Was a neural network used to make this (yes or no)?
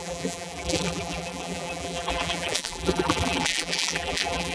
yes